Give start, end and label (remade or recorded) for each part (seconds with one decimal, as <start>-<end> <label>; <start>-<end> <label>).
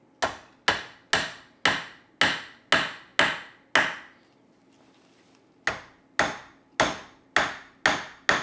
0.0-8.4 recorded